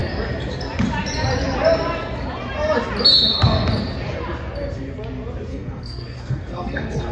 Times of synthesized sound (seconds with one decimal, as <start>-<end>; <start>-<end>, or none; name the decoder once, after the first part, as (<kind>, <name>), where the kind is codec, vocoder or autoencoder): 5.5-7.1 (codec, SNAC)